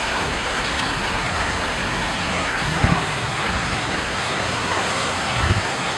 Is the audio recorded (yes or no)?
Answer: no